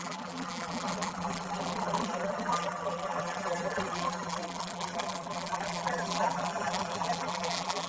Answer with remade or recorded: remade